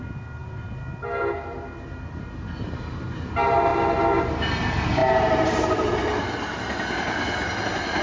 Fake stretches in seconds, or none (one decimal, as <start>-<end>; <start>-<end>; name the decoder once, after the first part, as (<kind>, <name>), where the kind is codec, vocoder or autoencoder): 5.0-5.9 (vocoder, BigVGAN v2)